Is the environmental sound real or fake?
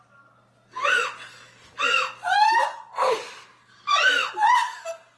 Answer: real